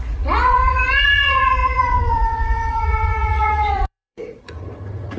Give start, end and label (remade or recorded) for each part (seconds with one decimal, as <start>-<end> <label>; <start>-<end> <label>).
0.0-5.2 remade